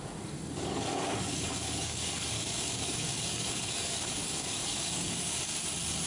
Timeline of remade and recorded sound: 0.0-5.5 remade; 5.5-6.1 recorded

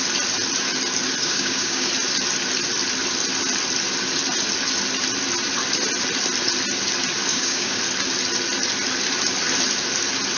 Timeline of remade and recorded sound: 0.0-1.2 recorded; 1.2-1.9 remade; 1.9-7.3 recorded; 7.3-7.8 remade; 7.8-10.4 recorded

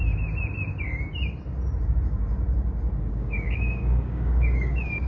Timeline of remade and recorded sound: 0.0-3.1 recorded; 3.1-5.1 remade

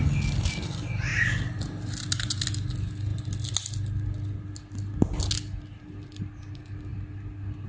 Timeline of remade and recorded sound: 0.0-7.7 recorded

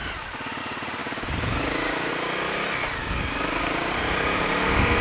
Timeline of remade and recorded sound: 0.0-1.0 recorded; 1.0-2.1 remade; 2.1-3.0 recorded; 3.0-3.9 remade; 3.9-5.0 recorded

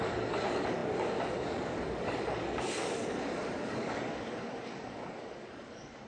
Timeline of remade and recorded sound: 0.0-6.1 remade